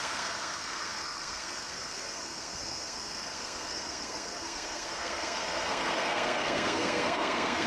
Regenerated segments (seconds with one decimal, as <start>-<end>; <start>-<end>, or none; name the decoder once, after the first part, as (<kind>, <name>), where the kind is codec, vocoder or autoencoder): 0.0-7.7 (codec, SNAC)